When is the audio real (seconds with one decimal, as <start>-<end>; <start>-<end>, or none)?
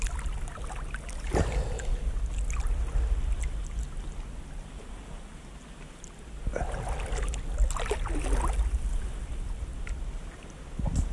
0.0-11.1